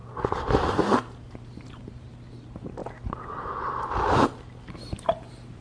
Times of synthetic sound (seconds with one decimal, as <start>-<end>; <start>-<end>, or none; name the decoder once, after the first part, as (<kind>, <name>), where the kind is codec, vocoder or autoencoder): 0.0-2.1 (vocoder, BigVGAN v2)

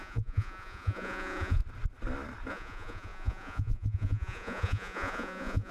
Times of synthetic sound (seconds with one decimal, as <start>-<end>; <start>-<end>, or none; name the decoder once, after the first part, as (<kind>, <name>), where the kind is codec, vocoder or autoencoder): 0.0-1.6 (vocoder, Vocos); 2.5-5.7

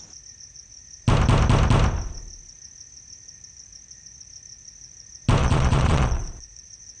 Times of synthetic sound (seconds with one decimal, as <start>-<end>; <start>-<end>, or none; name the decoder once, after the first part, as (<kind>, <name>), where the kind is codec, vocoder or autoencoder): 5.4-6.6 (vocoder, Vocos)

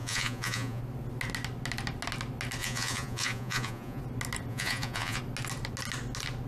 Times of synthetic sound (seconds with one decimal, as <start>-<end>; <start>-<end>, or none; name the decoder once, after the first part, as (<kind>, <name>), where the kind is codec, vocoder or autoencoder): 0.0-0.8 (vocoder, Vocos); 2.6-4.0; 4.5-5.2

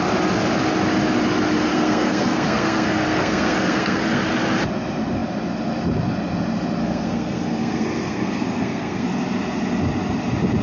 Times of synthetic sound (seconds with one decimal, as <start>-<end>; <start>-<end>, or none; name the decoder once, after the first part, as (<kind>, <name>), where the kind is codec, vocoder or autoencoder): 1.7-4.2 (codec, SNAC); 6.8-9.1

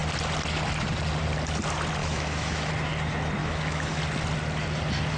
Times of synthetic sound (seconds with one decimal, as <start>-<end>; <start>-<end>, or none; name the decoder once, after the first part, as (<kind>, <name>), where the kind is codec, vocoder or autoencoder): 2.0-2.7 (autoencoder, DAC-VAE); 3.4-4.0

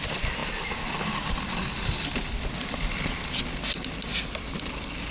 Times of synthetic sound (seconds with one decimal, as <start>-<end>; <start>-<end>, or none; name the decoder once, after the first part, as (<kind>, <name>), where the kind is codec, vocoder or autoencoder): 0.4-3.5 (vocoder, BigVGAN v2); 4.1-5.1

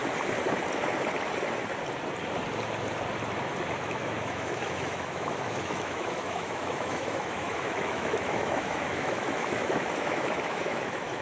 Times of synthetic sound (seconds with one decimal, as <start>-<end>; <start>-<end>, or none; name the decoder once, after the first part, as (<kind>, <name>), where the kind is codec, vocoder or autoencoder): 3.8-11.2 (autoencoder, DAC-VAE)